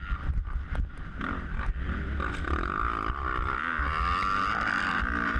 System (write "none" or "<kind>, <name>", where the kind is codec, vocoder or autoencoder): none